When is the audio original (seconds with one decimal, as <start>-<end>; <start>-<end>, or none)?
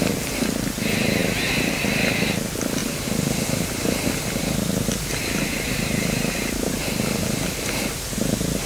0.0-1.2; 1.7-2.8; 7.8-8.7